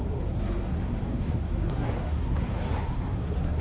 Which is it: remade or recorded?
remade